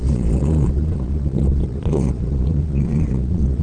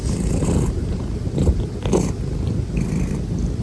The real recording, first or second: second